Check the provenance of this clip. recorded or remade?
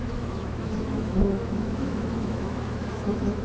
remade